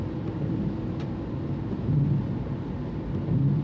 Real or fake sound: real